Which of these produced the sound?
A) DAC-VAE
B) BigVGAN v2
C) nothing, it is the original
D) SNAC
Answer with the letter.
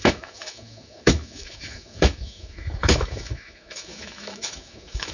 A